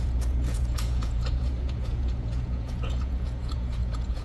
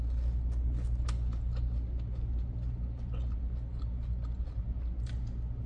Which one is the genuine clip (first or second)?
second